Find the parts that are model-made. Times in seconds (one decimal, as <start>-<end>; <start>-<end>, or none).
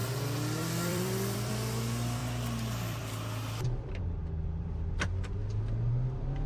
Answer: 0.0-1.5; 2.2-3.9